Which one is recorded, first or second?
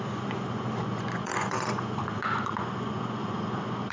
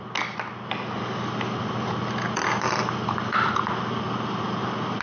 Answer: second